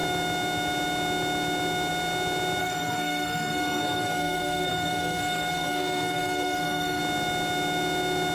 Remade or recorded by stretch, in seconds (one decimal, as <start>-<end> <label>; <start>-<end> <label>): 0.0-2.6 recorded; 2.6-7.0 remade; 7.0-8.3 recorded